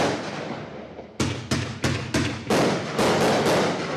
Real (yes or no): yes